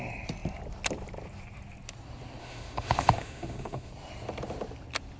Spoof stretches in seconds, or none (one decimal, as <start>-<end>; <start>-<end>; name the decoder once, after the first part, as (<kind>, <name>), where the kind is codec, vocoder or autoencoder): 2.4-3.9 (autoencoder, DAC-VAE)

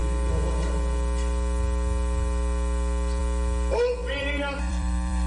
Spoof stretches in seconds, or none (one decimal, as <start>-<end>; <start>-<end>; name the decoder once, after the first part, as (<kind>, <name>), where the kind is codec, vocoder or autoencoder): 4.0-5.3 (vocoder, BigVGAN v2)

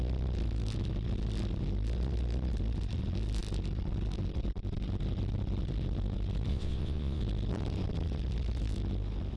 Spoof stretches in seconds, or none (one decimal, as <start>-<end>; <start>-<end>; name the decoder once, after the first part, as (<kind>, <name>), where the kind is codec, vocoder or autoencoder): 6.5-7.2 (vocoder, WaveNeXt)

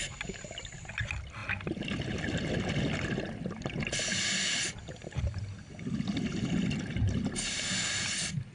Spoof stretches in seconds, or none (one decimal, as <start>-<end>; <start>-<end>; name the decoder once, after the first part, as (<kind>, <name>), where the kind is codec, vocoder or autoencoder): none